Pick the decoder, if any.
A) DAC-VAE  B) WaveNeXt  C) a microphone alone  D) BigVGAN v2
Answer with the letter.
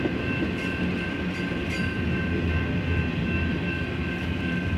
C